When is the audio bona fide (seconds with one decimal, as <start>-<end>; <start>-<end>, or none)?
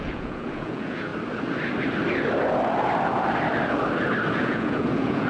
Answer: 1.1-4.3